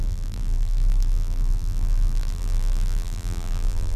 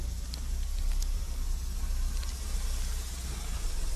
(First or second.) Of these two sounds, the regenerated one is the first